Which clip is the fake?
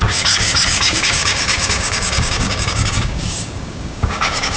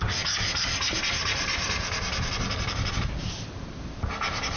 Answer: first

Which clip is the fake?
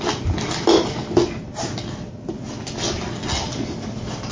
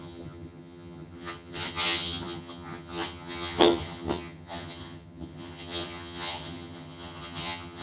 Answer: second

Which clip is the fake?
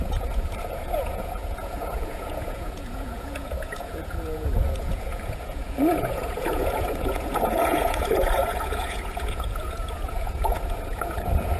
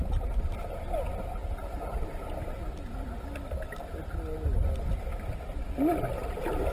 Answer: first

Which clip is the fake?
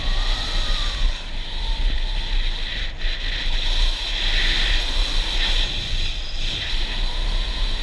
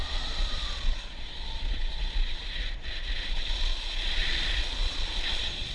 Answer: second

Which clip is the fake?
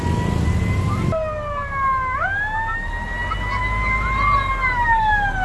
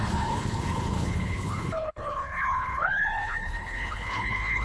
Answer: second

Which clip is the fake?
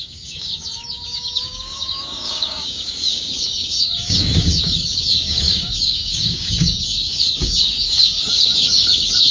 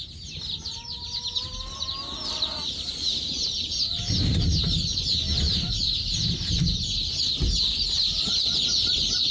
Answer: first